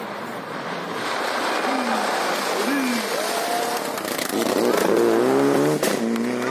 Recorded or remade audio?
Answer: recorded